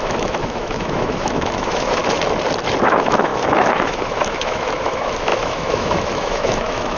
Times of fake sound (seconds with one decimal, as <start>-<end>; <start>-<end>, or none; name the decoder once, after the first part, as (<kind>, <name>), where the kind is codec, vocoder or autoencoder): 0.0-2.0 (autoencoder, DAC-VAE); 2.8-7.0